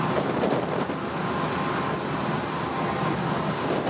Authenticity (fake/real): real